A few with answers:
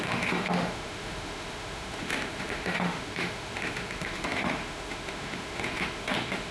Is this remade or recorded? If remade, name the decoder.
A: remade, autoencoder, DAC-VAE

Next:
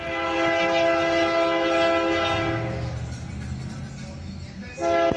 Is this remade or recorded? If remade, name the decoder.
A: recorded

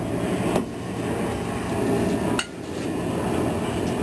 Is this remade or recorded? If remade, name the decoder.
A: recorded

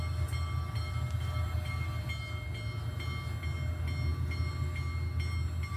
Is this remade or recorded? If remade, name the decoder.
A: recorded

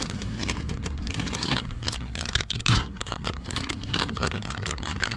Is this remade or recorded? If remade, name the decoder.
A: remade, codec, SNAC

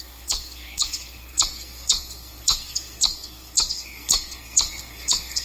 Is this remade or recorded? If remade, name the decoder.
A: remade, codec, SNAC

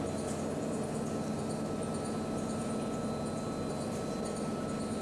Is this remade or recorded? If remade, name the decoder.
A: recorded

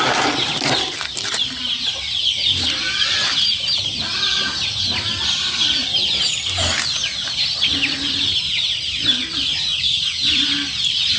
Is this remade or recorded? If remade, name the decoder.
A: recorded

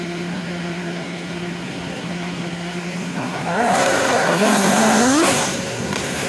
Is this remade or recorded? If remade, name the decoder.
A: remade, codec, SNAC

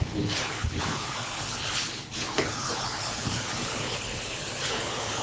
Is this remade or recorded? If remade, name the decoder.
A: remade, codec, HILCodec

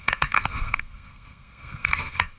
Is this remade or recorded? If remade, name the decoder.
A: remade, codec, SNAC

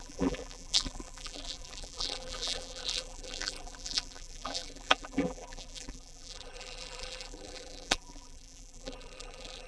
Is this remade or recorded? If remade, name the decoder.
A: remade, vocoder, BigVGAN v2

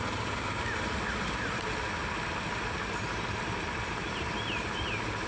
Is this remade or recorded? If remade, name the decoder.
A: recorded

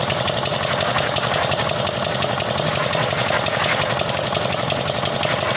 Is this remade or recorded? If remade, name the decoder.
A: recorded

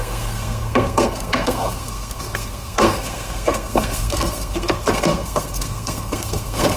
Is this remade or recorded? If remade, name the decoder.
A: remade, codec, SNAC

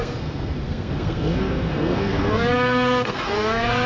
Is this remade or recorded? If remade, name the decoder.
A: remade, codec, SNAC